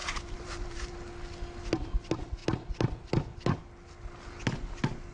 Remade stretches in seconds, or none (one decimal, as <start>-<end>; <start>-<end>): 0.0-0.9

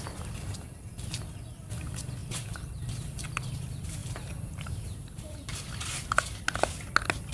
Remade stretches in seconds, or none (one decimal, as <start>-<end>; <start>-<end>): 4.0-6.4

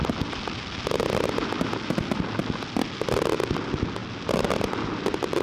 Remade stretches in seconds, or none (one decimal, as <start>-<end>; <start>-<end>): none

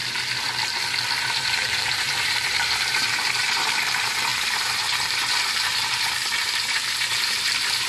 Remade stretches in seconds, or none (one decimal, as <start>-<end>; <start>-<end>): 1.3-7.9

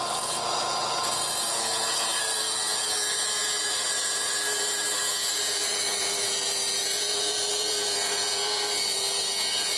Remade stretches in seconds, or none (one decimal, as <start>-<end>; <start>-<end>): 0.0-9.8

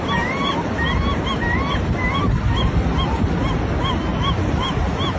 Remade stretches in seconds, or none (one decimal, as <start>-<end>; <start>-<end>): 4.1-4.7

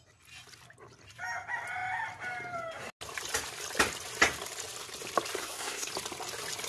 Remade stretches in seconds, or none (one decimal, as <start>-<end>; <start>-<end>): 5.4-5.9